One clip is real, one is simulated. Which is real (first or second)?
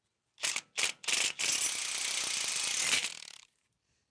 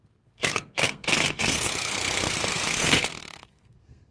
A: first